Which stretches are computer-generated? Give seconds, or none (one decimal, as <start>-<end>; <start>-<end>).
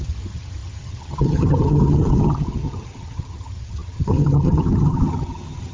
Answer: 0.0-5.7